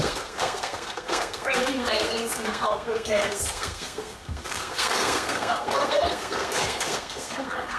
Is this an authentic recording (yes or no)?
no